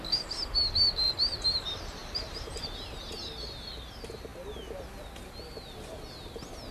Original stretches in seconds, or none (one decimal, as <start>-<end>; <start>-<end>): 0.0-2.0; 2.6-6.7